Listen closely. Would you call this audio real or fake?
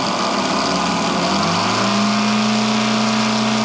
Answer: real